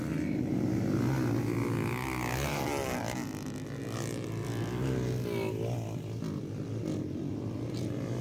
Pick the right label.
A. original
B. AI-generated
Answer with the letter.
A